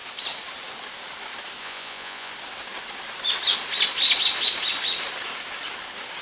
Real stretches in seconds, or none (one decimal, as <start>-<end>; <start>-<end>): 0.0-1.6; 2.3-6.2